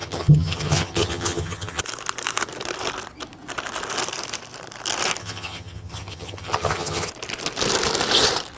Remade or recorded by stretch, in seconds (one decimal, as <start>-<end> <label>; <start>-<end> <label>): 0.0-1.8 remade; 1.8-5.2 recorded; 5.2-7.1 remade; 7.1-8.6 recorded